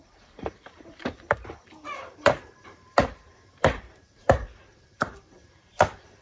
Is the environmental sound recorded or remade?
remade